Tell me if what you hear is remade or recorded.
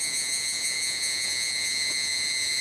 remade